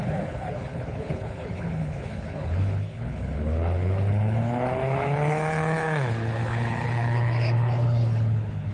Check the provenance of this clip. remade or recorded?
remade